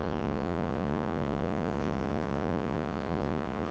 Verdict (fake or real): fake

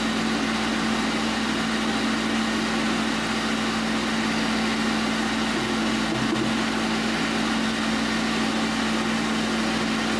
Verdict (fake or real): real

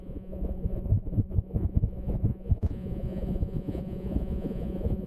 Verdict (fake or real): fake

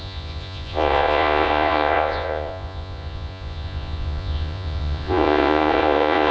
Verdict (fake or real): fake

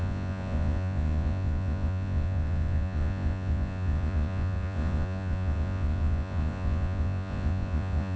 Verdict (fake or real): fake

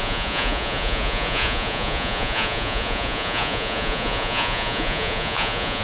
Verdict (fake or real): fake